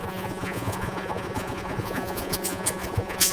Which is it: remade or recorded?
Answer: remade